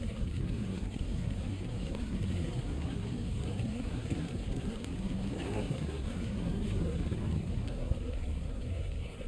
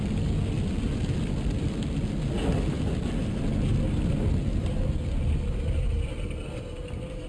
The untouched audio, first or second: second